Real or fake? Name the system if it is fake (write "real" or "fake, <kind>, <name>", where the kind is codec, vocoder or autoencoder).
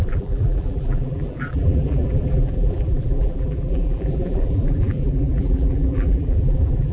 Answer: fake, vocoder, BigVGAN v2